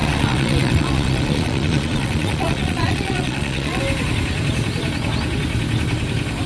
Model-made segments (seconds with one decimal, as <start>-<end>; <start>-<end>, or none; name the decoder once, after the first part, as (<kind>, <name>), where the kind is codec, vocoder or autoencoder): 0.0-3.8 (vocoder, Vocos)